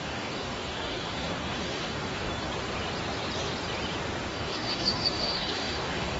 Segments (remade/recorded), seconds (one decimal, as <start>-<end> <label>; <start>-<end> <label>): 0.0-2.3 remade; 2.3-4.3 recorded; 4.3-6.2 remade